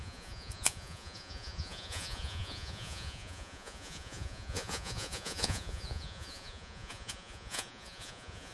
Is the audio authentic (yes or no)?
no